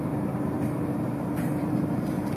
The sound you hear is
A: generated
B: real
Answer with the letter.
A